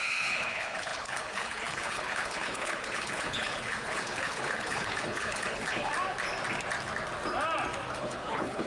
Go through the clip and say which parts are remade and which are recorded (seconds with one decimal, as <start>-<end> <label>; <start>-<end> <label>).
0.0-5.9 remade; 5.9-8.0 recorded; 8.0-8.7 remade

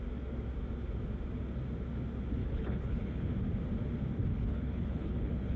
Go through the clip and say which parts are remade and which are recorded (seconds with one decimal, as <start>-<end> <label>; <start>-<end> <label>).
0.0-2.4 recorded; 2.4-3.3 remade; 3.3-4.3 recorded; 4.3-5.6 remade

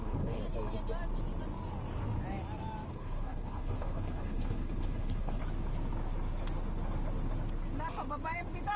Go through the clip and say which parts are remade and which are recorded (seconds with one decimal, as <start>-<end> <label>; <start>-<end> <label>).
0.0-0.4 remade; 0.4-2.9 recorded; 2.9-5.4 remade; 5.4-8.8 recorded

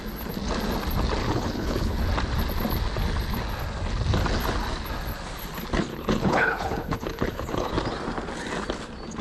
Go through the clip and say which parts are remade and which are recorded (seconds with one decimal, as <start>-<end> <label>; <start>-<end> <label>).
0.0-1.2 recorded; 1.2-2.0 remade; 2.0-5.9 recorded; 5.9-7.7 remade; 7.7-9.2 recorded

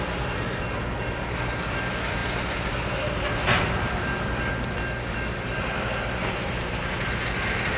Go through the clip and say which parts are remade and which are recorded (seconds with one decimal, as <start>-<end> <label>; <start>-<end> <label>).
0.0-7.8 recorded

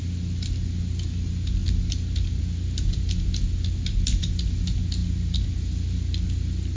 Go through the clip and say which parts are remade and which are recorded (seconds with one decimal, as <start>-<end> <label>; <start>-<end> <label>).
0.0-6.8 recorded

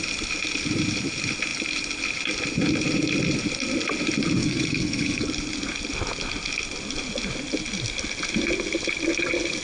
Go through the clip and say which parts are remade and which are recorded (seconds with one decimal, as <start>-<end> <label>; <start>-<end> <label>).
0.0-4.4 recorded; 4.4-5.3 remade; 5.3-9.6 recorded